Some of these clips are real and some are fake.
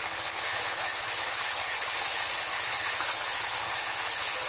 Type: fake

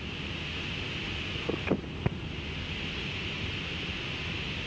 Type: real